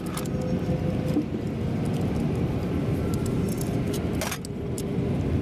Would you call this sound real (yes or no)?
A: yes